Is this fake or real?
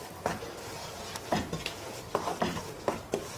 real